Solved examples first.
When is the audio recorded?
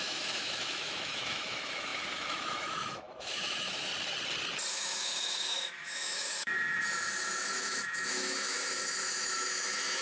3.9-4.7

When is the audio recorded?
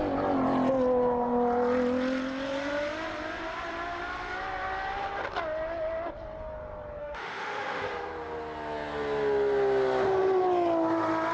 0.0-7.0; 7.8-11.3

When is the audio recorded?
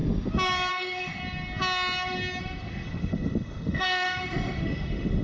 0.0-0.7; 1.2-2.4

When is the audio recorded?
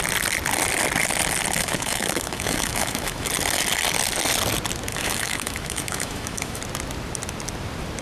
0.0-1.6; 3.3-4.9; 6.6-8.0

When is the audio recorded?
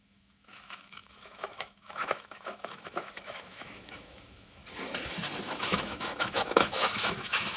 4.6-5.4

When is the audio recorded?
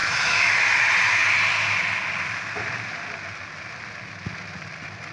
0.5-5.1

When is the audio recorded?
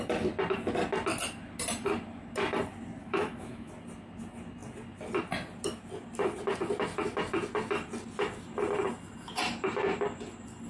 0.0-3.0; 3.7-10.7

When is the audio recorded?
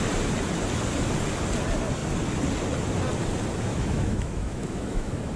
0.0-3.7